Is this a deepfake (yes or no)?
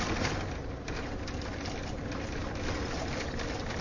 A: no